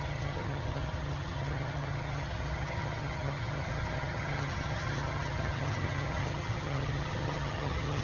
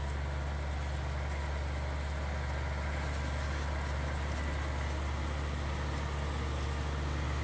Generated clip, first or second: first